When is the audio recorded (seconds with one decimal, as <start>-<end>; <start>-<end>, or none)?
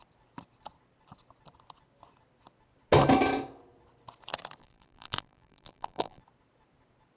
0.0-4.6; 6.2-7.2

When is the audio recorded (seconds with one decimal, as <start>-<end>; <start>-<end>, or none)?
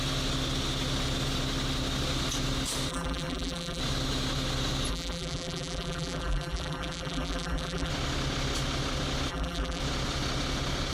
0.0-2.9; 3.8-4.9; 7.9-9.3; 9.8-10.9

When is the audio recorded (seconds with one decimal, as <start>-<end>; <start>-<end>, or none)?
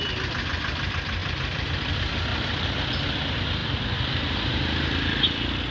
0.0-1.2; 1.9-2.3; 2.9-5.7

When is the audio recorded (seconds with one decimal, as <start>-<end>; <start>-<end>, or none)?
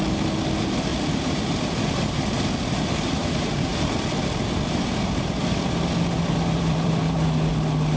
0.0-0.9; 2.3-3.7; 7.5-8.0